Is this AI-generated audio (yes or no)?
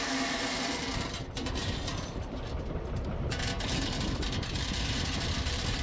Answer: yes